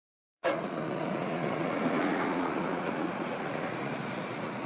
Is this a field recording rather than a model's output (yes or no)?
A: no